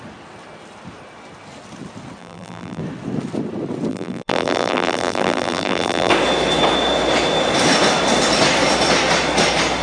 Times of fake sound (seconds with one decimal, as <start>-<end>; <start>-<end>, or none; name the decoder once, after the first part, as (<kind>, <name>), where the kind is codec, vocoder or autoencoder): 2.2-2.8 (vocoder, BigVGAN v2); 3.9-6.1

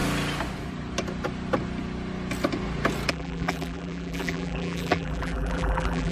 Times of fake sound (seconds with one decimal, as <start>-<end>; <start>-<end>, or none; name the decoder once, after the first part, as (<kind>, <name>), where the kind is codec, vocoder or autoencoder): 3.1-6.1 (vocoder, BigVGAN v2)

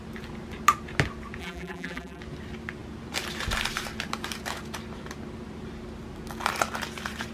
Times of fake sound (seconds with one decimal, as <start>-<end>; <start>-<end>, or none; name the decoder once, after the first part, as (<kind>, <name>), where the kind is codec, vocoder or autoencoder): 1.4-2.2 (vocoder, BigVGAN v2)

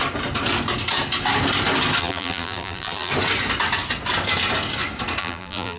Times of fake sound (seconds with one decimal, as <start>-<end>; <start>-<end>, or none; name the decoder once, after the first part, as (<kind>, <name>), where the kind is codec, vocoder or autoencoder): 2.0-3.1 (vocoder, BigVGAN v2); 5.2-5.8

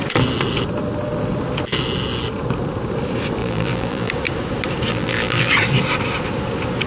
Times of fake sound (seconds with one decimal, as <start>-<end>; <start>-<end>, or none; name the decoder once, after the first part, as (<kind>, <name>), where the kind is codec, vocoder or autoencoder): 3.4-4.1 (vocoder, BigVGAN v2); 4.9-5.5

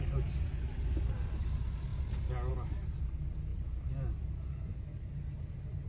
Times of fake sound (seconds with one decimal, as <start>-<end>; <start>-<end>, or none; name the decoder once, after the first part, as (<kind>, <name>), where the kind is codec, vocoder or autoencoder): 1.9-2.5 (vocoder, BigVGAN v2); 3.5-4.3

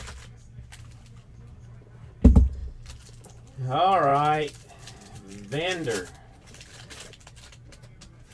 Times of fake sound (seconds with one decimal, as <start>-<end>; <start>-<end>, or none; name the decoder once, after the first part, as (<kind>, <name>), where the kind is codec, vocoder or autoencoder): 4.1-7.2 (vocoder, BigVGAN v2)

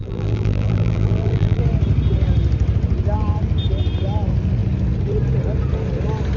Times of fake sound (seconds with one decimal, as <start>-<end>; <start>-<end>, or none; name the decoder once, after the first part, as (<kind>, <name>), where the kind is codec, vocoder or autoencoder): 0.0-1.6 (vocoder, BigVGAN v2)